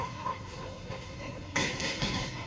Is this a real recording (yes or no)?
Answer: no